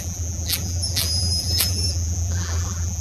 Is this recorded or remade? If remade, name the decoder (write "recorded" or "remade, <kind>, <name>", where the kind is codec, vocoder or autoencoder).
remade, vocoder, BigVGAN v2